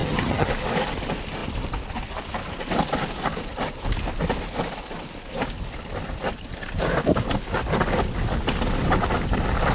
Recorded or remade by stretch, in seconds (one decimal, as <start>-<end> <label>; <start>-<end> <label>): 0.0-0.5 remade; 0.5-9.7 recorded